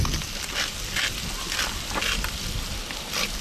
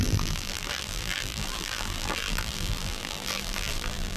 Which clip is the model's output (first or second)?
second